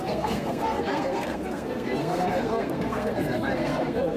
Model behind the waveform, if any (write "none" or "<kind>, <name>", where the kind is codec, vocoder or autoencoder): codec, SNAC